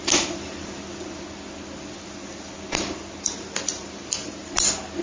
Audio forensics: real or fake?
real